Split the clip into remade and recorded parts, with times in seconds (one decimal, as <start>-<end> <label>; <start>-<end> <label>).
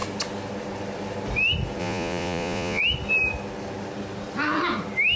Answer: 0.0-1.8 recorded; 1.8-2.8 remade; 2.8-5.2 recorded